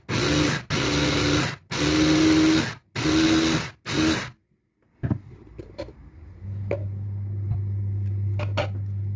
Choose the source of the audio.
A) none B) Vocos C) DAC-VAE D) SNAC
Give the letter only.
A